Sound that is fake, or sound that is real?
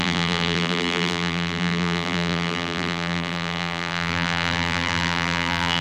fake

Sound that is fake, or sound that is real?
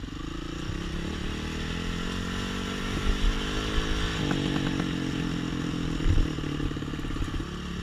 real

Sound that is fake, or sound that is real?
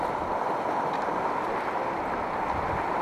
real